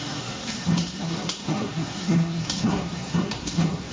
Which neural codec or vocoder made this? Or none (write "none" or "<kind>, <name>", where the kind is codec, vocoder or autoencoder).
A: codec, SNAC